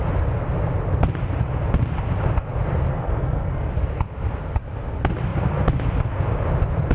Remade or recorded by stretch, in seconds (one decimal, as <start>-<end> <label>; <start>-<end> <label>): 0.0-2.9 recorded; 2.9-3.7 remade; 3.7-6.9 recorded